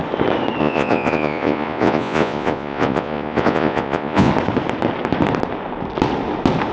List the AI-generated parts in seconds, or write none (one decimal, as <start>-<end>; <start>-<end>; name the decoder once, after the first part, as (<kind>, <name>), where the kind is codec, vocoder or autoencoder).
0.6-4.3 (vocoder, Vocos)